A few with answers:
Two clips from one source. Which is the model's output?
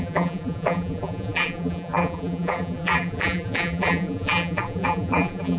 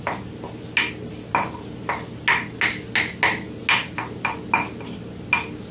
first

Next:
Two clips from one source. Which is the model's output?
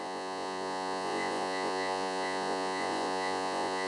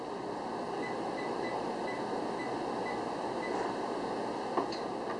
first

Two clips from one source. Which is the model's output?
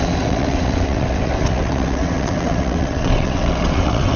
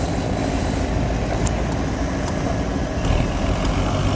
first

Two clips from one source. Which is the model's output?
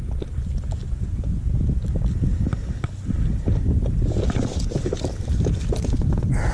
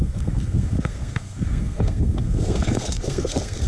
second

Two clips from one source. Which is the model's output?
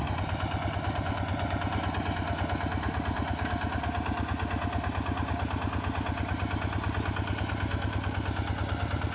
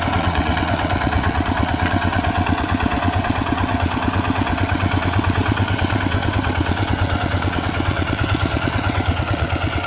second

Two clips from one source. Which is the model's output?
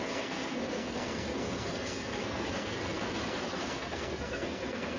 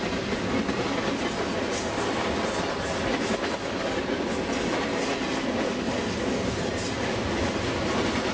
first